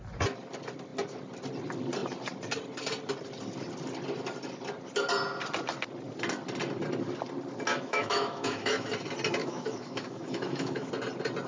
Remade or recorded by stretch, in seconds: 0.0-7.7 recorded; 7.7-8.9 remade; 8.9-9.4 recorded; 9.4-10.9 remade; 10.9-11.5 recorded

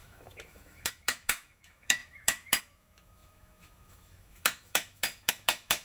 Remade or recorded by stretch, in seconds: 0.0-5.8 remade

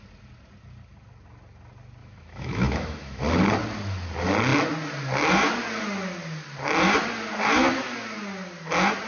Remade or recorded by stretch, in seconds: 0.0-2.0 recorded; 2.0-3.2 remade; 3.2-9.1 recorded

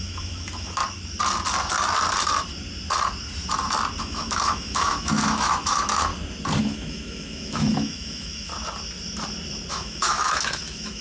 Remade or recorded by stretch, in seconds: 0.0-0.8 remade; 0.8-4.0 recorded; 4.0-6.1 remade; 6.1-6.6 recorded; 6.6-8.5 remade; 8.5-9.7 recorded; 9.7-11.0 remade

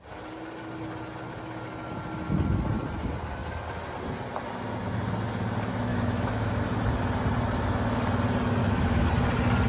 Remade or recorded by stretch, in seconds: 0.0-5.9 recorded; 5.9-6.6 remade; 6.6-8.6 recorded; 8.6-9.1 remade; 9.1-9.7 recorded

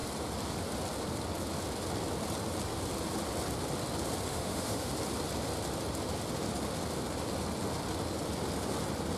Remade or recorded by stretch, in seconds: 0.0-4.3 recorded; 4.3-4.9 remade; 4.9-9.2 recorded

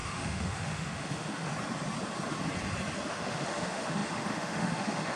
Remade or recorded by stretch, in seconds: 0.0-1.5 remade; 1.5-3.1 recorded; 3.1-5.2 remade

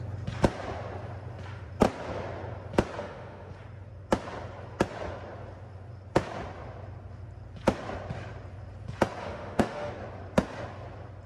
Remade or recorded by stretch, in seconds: 0.0-3.0 recorded; 3.0-3.5 remade; 3.5-9.2 recorded; 9.2-9.9 remade; 9.9-11.3 recorded